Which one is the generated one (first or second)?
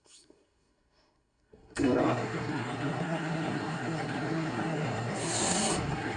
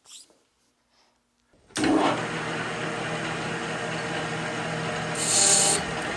first